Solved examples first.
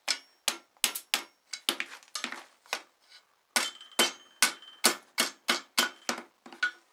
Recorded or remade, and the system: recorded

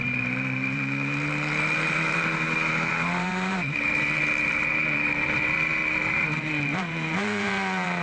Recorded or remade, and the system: remade, vocoder, BigVGAN v2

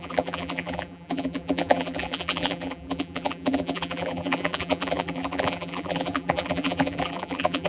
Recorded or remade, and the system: remade, vocoder, BigVGAN v2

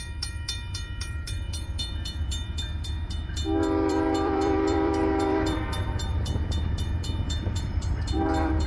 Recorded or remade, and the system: remade, vocoder, BigVGAN v2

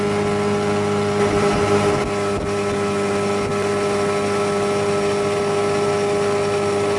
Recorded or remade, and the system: recorded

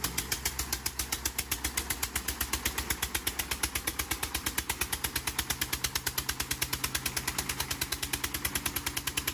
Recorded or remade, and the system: recorded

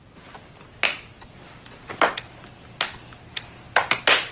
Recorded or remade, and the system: recorded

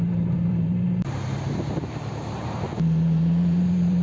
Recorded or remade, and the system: remade, vocoder, BigVGAN v2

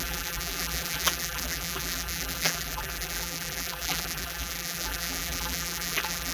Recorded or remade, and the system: remade, vocoder, BigVGAN v2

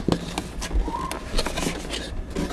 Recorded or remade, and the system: recorded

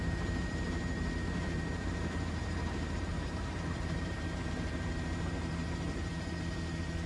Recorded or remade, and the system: remade, vocoder, BigVGAN v2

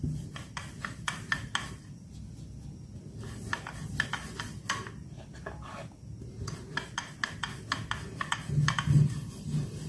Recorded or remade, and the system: recorded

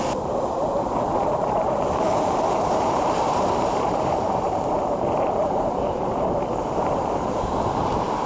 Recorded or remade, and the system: remade, vocoder, BigVGAN v2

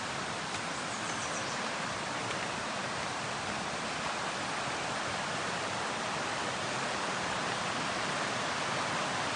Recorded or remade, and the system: remade, vocoder, BigVGAN v2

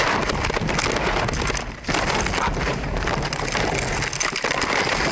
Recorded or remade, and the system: recorded